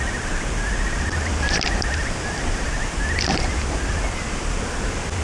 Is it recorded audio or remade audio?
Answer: recorded